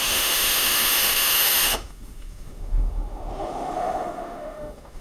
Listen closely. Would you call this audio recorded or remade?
remade